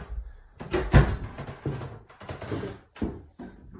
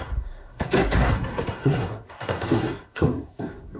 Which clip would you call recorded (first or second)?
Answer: first